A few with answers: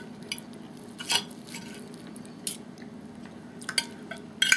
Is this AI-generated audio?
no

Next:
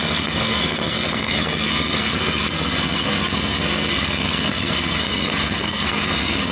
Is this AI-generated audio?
yes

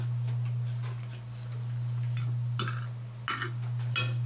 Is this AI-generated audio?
no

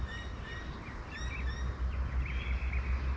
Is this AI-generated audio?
no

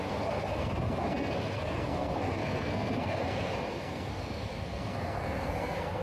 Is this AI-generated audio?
yes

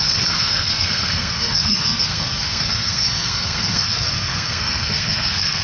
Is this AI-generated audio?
yes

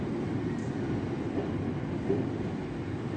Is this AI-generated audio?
no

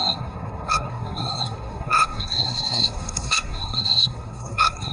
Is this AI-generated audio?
yes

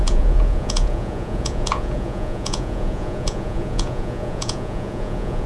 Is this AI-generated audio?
yes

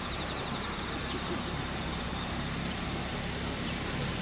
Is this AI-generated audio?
no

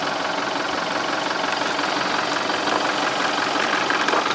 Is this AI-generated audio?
no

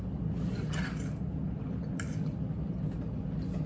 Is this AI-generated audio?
no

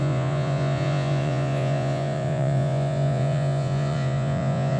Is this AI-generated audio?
yes